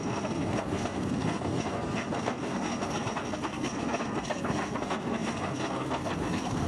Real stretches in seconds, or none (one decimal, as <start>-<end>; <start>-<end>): none